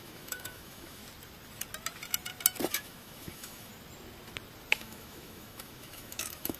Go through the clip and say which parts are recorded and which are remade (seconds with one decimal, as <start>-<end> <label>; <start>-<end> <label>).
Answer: 0.0-1.0 remade; 1.0-2.7 recorded; 2.7-3.7 remade; 3.7-4.7 recorded; 4.7-6.6 remade